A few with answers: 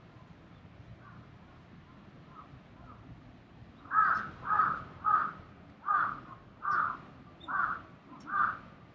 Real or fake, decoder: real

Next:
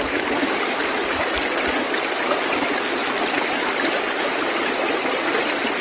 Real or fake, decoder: real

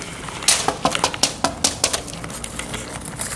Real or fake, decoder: real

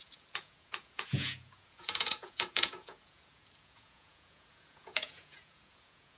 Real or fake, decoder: fake, vocoder, Vocos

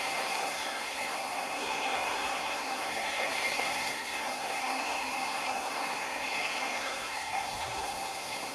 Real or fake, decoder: fake, codec, SNAC